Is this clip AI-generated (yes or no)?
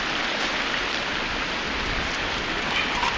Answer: no